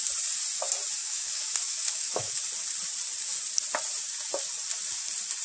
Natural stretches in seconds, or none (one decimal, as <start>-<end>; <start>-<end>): 0.0-1.0; 2.3-5.4